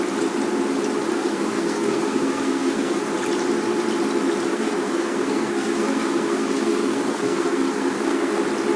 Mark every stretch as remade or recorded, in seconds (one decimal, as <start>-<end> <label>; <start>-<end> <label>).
0.0-1.1 recorded; 1.1-3.0 remade; 3.0-4.5 recorded; 4.5-8.4 remade; 8.4-8.8 recorded